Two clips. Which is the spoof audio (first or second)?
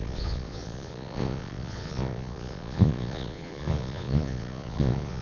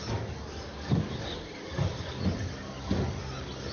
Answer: first